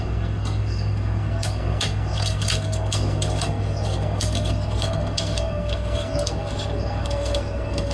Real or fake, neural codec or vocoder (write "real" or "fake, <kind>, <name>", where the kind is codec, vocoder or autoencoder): fake, codec, SNAC